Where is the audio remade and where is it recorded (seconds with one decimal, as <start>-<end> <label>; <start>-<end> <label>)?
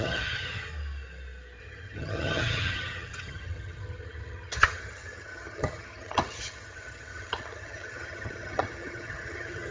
0.0-0.7 remade; 0.7-1.6 recorded; 1.6-9.7 remade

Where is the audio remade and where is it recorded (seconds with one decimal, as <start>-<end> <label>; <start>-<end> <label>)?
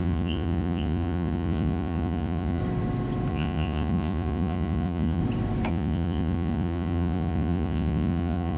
0.0-2.6 remade; 2.6-3.3 recorded; 3.3-5.2 remade; 5.2-5.7 recorded; 5.7-8.6 remade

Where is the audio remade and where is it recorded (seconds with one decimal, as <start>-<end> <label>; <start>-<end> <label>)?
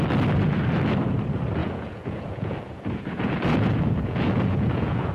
0.0-1.6 recorded; 1.6-5.1 remade